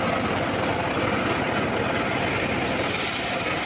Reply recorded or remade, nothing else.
recorded